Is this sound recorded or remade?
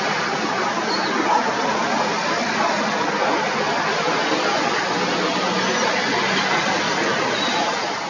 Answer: recorded